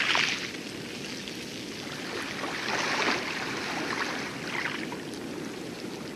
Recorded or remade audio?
recorded